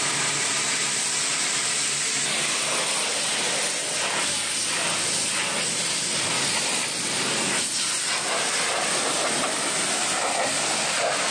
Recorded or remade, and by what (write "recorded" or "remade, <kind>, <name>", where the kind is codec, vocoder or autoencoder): recorded